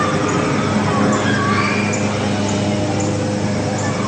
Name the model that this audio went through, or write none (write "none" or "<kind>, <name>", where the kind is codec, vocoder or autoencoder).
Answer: none